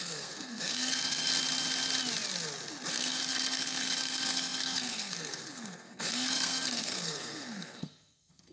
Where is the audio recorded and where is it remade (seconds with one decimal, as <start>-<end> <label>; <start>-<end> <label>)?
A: 0.0-1.3 remade; 1.3-2.9 recorded; 2.9-8.5 remade